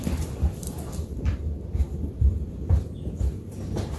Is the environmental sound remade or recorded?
remade